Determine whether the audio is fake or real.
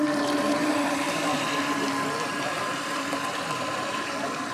fake